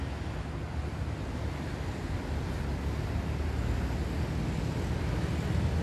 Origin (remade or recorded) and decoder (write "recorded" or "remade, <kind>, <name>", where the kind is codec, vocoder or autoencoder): recorded